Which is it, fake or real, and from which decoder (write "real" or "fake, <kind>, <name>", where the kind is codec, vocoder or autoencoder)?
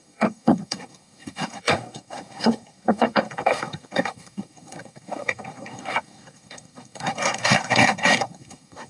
fake, codec, SNAC